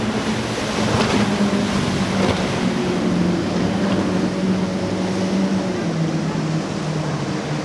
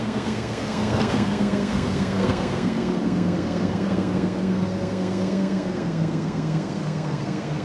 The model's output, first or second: second